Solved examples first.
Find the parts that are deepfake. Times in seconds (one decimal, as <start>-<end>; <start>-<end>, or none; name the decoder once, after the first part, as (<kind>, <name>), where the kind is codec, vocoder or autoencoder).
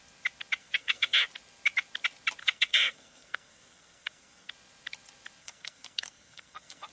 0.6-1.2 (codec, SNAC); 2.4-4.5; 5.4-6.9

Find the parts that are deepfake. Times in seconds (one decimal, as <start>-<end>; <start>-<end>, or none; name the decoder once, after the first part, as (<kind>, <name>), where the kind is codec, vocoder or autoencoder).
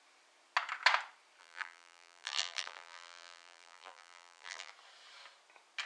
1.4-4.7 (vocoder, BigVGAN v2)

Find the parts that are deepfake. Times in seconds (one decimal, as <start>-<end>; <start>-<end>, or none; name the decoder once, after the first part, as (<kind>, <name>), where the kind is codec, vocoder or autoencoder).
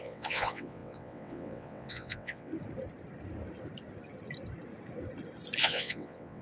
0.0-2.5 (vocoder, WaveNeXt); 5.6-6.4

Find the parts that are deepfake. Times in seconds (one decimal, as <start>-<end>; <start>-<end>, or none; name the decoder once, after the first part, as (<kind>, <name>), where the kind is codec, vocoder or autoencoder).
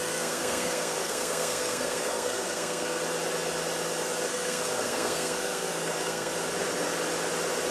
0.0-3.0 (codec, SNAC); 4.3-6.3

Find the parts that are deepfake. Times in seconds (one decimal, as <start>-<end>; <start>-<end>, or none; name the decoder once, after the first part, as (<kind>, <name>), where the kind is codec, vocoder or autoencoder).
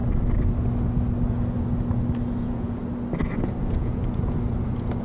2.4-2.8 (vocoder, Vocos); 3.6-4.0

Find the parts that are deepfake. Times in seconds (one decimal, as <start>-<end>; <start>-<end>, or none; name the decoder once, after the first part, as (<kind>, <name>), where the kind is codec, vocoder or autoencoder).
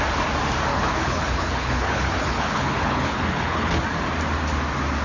0.7-3.7 (codec, HILCodec)